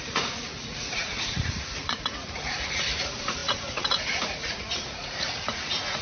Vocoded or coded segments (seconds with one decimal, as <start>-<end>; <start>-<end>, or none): 0.0-6.0